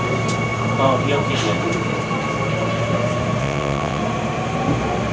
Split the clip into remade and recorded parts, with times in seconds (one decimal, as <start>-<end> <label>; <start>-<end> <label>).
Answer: 0.0-3.4 recorded; 3.4-4.0 remade; 4.0-5.1 recorded